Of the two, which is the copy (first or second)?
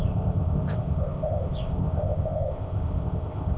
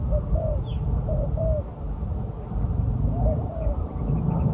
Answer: first